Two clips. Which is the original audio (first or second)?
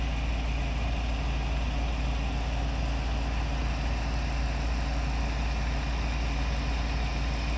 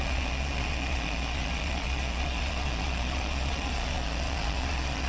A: first